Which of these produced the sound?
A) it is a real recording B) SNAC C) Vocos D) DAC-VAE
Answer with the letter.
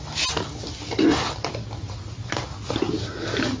A